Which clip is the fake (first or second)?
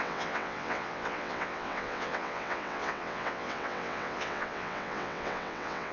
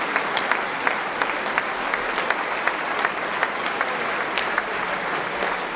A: first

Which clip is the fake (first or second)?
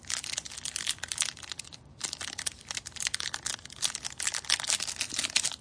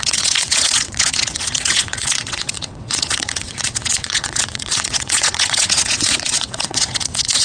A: second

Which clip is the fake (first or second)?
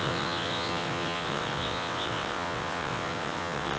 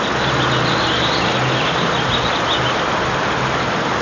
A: first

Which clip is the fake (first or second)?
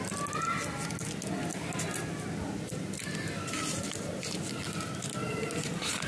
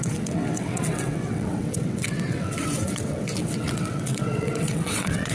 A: second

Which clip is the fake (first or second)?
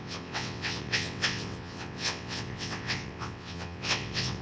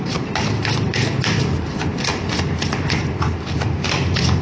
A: first